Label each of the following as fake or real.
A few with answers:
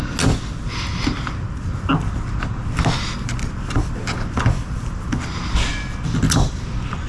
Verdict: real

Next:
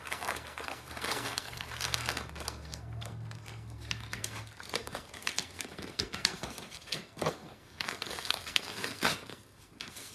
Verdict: fake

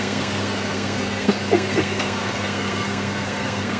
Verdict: fake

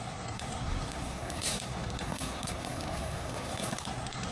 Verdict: fake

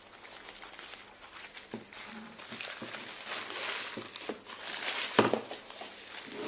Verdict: real